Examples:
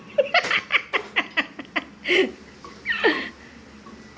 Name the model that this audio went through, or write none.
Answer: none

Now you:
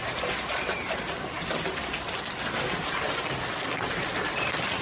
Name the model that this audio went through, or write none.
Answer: none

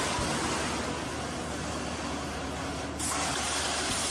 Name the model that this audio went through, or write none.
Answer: none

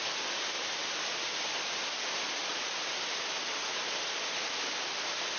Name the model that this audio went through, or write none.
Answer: none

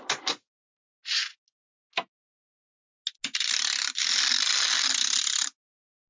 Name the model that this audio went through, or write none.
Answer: none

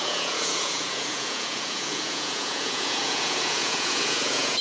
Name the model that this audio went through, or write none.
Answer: vocoder, Vocos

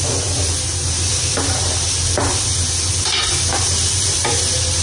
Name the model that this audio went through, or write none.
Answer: none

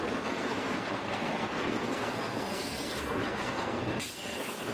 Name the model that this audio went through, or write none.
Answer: codec, SNAC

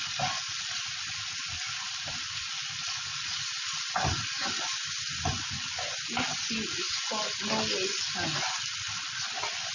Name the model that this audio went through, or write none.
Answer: none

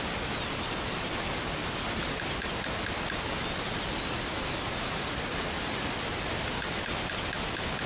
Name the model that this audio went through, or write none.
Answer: none